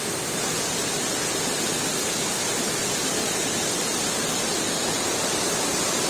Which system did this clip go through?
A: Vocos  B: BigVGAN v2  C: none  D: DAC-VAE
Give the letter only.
C